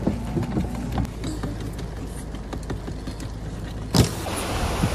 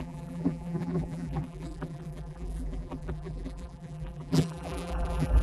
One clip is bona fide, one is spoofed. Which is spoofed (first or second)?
second